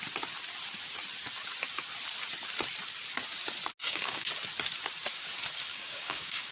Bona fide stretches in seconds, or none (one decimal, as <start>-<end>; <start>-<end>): 0.0-3.8; 4.3-5.7